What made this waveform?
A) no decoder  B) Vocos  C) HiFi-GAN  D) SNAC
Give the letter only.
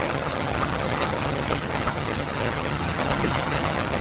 C